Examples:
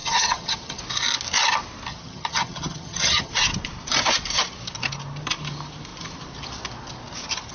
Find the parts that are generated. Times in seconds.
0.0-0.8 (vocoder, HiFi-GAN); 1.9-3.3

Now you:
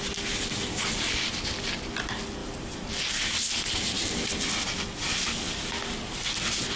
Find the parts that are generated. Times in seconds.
2.4-2.9 (vocoder, BigVGAN v2)

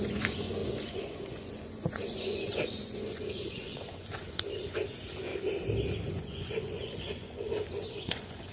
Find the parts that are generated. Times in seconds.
0.0-5.3 (vocoder, Vocos); 6.1-8.5

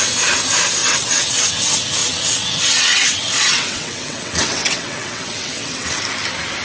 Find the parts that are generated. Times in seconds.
0.8-1.5 (vocoder, WaveNeXt); 2.0-6.0

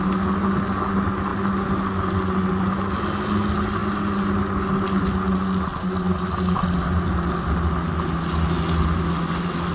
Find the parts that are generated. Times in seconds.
none

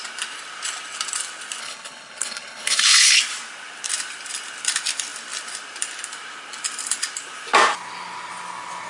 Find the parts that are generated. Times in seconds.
1.6-3.2 (codec, HILCodec)

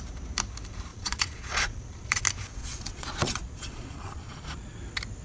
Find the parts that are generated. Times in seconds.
0.9-2.2 (vocoder, Vocos); 2.6-4.8

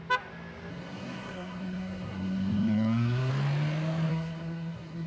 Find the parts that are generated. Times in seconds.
0.7-3.3 (codec, SNAC); 4.1-5.1